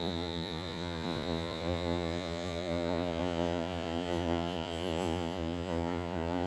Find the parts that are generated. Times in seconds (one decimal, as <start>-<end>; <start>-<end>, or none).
0.0-6.5